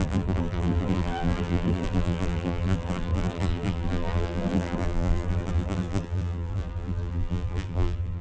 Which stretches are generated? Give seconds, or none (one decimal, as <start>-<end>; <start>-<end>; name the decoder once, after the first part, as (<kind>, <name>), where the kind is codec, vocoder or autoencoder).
0.0-8.2 (vocoder, BigVGAN v2)